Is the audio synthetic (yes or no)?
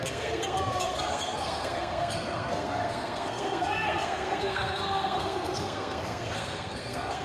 yes